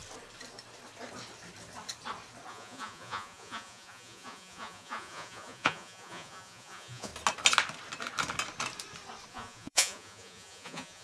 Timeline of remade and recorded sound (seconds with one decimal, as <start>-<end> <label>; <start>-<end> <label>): 0.0-2.5 recorded; 2.5-7.1 remade; 7.1-9.3 recorded; 9.3-11.0 remade

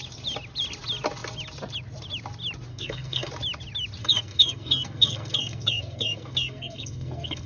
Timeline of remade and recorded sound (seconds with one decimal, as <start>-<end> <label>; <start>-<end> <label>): 0.0-2.7 recorded; 2.7-3.3 remade; 3.3-4.0 recorded; 4.0-7.5 remade

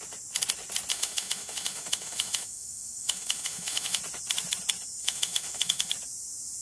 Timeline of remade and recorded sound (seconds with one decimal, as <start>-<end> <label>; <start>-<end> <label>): 0.0-0.9 recorded; 0.9-4.0 remade; 4.0-5.0 recorded; 5.0-5.9 remade; 5.9-6.6 recorded

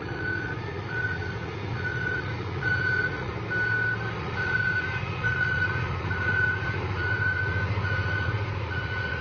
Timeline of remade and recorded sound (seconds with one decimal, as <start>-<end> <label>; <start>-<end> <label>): 0.0-3.3 remade; 3.3-4.2 recorded; 4.2-9.2 remade

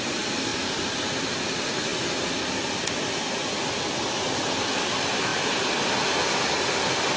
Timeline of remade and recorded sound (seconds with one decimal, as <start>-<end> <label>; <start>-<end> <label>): 0.0-5.3 remade; 5.3-6.5 recorded; 6.5-7.2 remade

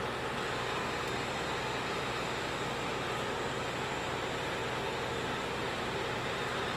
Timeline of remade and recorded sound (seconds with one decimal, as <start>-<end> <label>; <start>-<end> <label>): 0.0-6.8 recorded